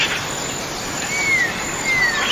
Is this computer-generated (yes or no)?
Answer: no